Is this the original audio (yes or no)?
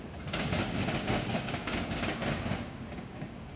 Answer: no